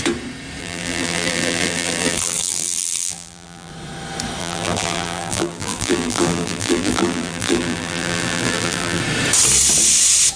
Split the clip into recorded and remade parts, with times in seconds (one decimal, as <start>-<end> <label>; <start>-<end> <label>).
0.0-0.6 recorded; 0.6-3.7 remade; 3.7-4.4 recorded; 4.4-9.0 remade; 9.0-10.4 recorded